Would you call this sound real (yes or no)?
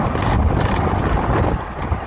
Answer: yes